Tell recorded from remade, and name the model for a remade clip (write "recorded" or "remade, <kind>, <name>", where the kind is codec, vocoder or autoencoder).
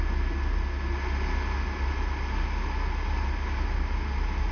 recorded